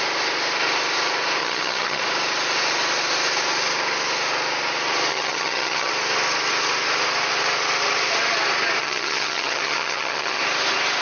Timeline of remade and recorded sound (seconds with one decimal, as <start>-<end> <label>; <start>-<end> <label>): 0.0-1.4 recorded; 1.4-2.0 remade; 2.0-5.1 recorded; 5.1-5.9 remade; 5.9-8.8 recorded; 8.8-10.4 remade; 10.4-11.0 recorded